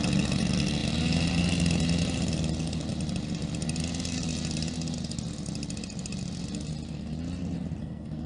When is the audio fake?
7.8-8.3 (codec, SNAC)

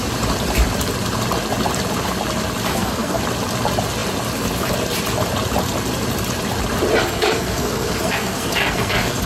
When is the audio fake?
2.7-3.2 (codec, SNAC); 7.0-9.3

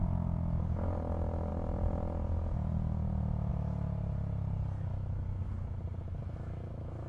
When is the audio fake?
4.9-5.5 (autoencoder, DAC-VAE); 6.2-7.1

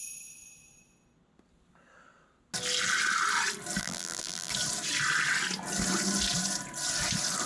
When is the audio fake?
3.8-4.5 (vocoder, BigVGAN v2)

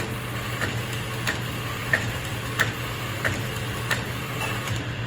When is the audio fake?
1.8-5.1 (vocoder, BigVGAN v2)

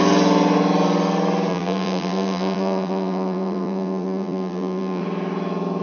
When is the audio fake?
1.5-5.0 (vocoder, BigVGAN v2)